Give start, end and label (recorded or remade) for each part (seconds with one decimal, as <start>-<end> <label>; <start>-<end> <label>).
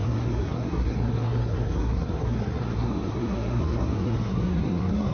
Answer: 0.0-5.1 remade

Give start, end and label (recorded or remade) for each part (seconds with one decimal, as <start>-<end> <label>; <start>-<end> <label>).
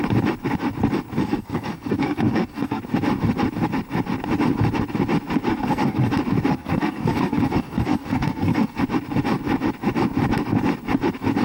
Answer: 0.0-1.2 recorded; 1.2-2.8 remade; 2.8-5.5 recorded; 5.5-6.1 remade; 6.1-6.5 recorded; 6.5-8.8 remade; 8.8-11.4 recorded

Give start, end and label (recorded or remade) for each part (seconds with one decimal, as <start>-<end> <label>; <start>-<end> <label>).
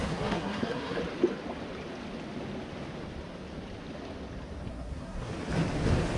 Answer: 0.0-1.0 remade; 1.0-4.7 recorded; 4.7-5.3 remade; 5.3-6.2 recorded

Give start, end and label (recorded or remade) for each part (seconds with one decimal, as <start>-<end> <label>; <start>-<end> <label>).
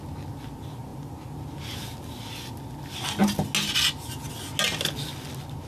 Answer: 0.0-5.7 recorded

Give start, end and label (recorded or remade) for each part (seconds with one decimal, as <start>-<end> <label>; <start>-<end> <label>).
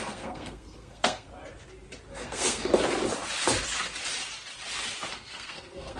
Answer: 0.0-1.3 remade; 1.3-2.1 recorded; 2.1-2.7 remade; 2.7-5.1 recorded; 5.1-6.0 remade